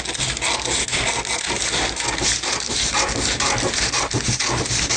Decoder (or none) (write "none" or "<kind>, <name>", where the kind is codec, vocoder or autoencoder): none